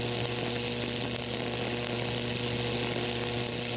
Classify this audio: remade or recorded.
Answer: recorded